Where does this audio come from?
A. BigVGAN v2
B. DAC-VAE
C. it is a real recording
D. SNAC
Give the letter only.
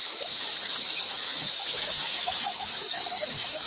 B